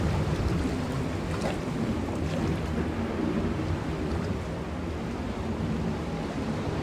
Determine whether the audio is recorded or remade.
remade